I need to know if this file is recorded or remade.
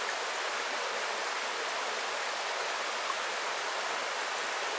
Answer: recorded